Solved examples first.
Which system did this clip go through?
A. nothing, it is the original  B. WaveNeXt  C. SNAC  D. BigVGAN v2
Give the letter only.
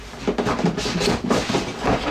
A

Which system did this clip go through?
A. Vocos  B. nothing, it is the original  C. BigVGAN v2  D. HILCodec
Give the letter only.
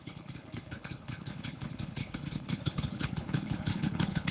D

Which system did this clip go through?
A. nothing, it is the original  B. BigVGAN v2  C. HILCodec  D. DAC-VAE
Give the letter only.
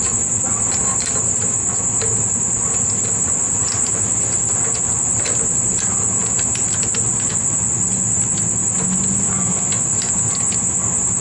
A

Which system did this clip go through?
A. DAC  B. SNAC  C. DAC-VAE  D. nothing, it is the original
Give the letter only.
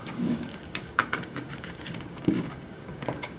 A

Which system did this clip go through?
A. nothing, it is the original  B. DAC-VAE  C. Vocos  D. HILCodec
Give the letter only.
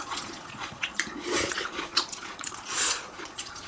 C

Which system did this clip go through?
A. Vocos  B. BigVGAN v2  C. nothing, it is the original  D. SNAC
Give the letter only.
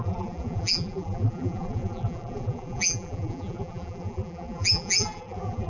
B